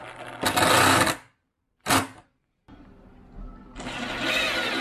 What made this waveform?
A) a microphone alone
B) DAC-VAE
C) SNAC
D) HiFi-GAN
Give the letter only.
A